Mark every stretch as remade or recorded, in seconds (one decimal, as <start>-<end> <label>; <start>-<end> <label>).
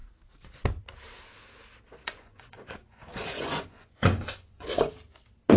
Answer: 0.0-2.0 recorded; 2.0-4.9 remade; 4.9-5.6 recorded